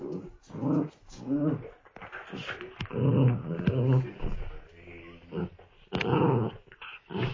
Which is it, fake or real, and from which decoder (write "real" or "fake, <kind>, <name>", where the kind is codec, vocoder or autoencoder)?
real